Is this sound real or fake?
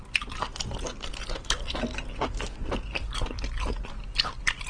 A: real